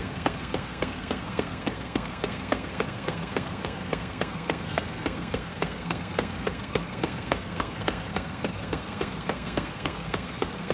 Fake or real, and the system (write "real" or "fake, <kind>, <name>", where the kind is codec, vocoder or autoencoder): fake, codec, SNAC